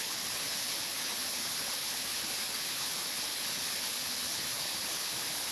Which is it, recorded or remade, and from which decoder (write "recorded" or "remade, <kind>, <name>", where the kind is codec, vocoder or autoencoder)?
remade, codec, HILCodec